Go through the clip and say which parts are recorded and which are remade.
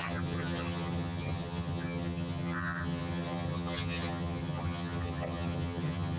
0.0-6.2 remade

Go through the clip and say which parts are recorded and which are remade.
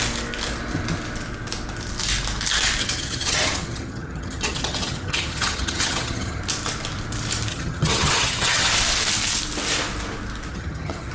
0.0-2.8 recorded; 2.8-6.4 remade; 6.4-7.5 recorded; 7.5-8.7 remade; 8.7-10.5 recorded; 10.5-11.1 remade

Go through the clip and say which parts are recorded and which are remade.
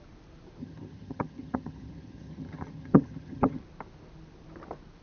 0.0-0.6 recorded; 0.6-3.6 remade; 3.6-5.0 recorded